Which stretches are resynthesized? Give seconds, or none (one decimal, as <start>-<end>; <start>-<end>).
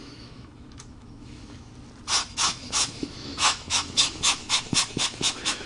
0.0-1.7; 2.3-5.7